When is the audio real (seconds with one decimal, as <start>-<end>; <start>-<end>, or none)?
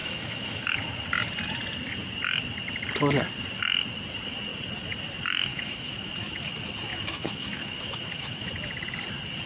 0.6-5.5; 6.5-6.9; 8.5-9.5